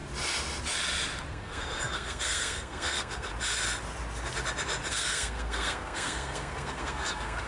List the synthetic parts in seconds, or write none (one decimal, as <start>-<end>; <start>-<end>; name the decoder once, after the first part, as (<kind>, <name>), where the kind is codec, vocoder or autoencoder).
1.3-3.3 (codec, SNAC); 4.9-7.5